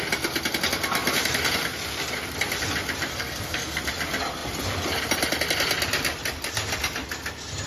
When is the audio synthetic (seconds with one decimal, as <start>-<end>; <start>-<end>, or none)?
3.1-3.8